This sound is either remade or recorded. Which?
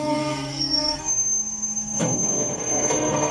remade